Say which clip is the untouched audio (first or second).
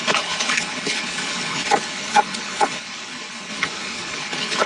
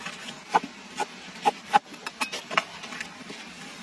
second